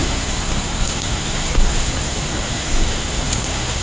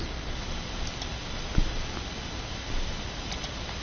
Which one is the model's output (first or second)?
first